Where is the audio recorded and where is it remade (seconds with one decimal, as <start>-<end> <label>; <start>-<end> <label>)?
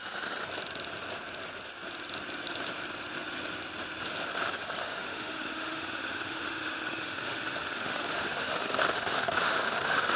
0.0-4.8 recorded; 4.8-10.2 remade